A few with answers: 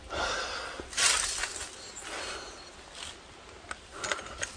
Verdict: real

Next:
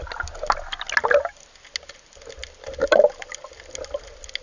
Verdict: real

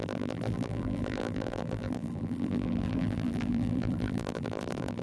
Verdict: fake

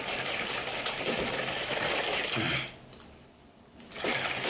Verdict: real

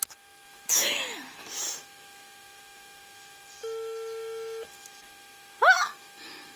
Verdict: fake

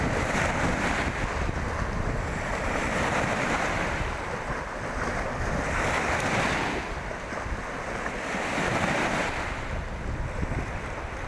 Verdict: real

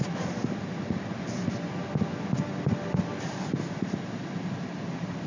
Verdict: real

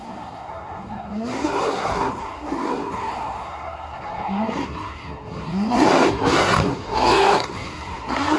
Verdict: fake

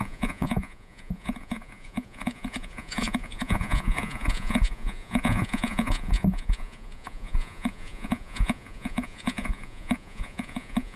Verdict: fake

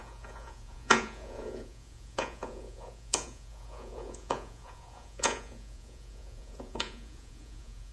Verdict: fake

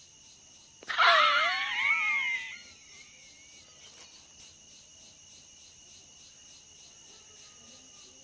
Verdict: real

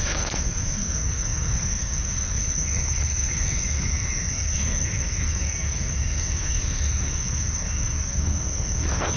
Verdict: fake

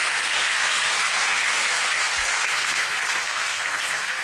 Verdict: fake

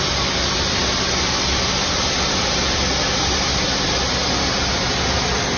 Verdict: real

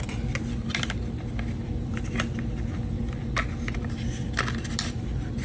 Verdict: real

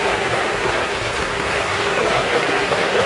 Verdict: fake